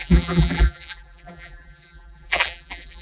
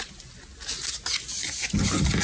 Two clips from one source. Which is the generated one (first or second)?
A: first